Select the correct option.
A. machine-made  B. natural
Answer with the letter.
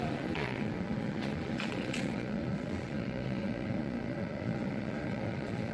A